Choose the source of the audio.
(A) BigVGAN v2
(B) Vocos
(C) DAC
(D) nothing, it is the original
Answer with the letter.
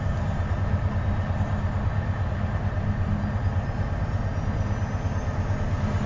D